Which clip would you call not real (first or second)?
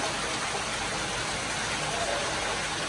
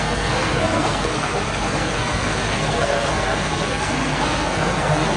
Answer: second